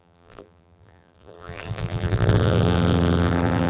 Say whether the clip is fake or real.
fake